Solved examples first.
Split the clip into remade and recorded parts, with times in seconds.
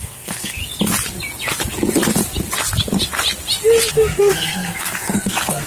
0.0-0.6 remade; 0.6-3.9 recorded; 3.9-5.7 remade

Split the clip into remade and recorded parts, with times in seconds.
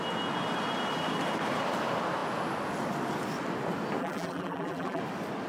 0.0-4.0 recorded; 4.0-5.0 remade; 5.0-5.5 recorded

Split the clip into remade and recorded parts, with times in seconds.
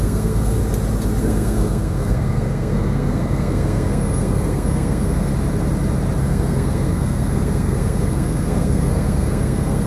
0.0-0.6 remade; 0.6-1.2 recorded; 1.2-5.3 remade; 5.3-6.2 recorded; 6.2-9.9 remade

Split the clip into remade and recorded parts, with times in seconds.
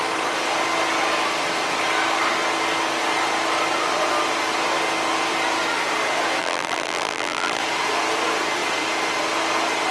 0.0-6.4 recorded; 6.4-7.6 remade; 7.6-9.9 recorded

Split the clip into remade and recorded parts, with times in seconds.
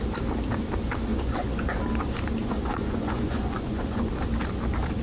0.0-1.1 recorded; 1.1-1.8 remade; 1.8-2.4 recorded; 2.4-4.1 remade; 4.1-5.0 recorded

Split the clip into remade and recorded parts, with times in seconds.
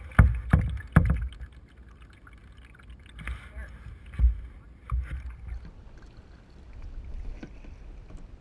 0.0-8.4 recorded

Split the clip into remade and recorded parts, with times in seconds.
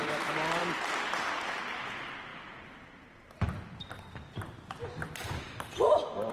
0.0-0.6 recorded; 0.6-1.1 remade; 1.1-2.3 recorded; 2.3-6.3 remade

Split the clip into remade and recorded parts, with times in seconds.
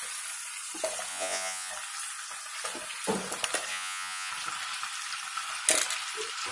0.0-1.1 recorded; 1.1-1.7 remade; 1.7-3.7 recorded; 3.7-4.3 remade; 4.3-6.5 recorded